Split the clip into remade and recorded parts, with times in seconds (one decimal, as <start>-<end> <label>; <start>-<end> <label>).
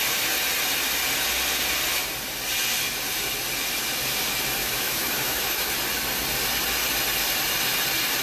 0.0-4.6 recorded; 4.6-5.7 remade; 5.7-8.2 recorded